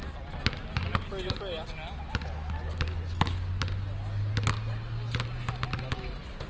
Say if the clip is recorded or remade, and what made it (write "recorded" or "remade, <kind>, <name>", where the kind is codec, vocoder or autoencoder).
recorded